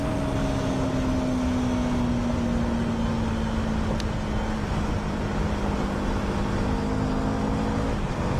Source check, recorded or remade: recorded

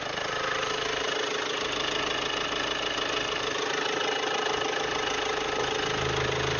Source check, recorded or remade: recorded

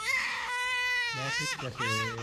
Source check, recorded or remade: remade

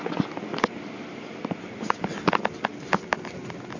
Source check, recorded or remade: recorded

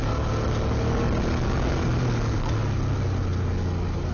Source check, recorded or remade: recorded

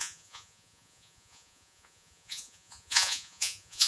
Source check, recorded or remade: remade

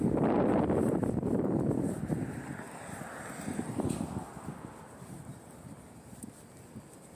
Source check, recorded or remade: recorded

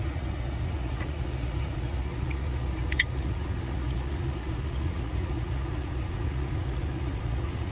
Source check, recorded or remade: remade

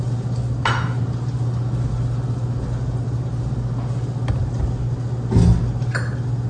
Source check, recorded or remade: recorded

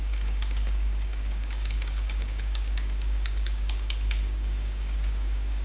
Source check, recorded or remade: remade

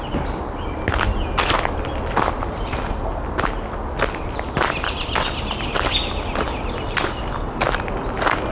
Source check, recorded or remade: recorded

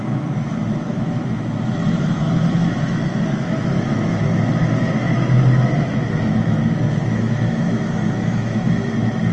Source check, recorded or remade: remade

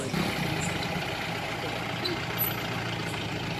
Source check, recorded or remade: recorded